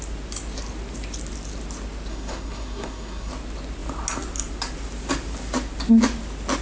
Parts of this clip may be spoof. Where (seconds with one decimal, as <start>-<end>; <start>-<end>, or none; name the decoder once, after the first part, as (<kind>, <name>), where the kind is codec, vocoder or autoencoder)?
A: 2.1-3.3 (codec, SNAC)